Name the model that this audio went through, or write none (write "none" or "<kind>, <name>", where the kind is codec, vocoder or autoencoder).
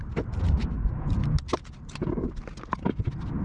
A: none